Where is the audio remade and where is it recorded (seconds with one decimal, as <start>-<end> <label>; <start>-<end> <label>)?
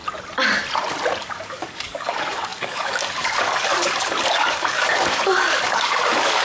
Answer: 0.0-1.2 recorded; 1.2-6.4 remade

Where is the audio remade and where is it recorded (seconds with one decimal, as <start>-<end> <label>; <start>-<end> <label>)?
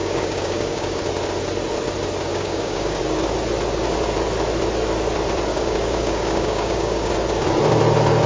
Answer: 0.0-1.0 remade; 1.0-2.3 recorded; 2.3-3.0 remade; 3.0-5.5 recorded; 5.5-7.1 remade; 7.1-8.3 recorded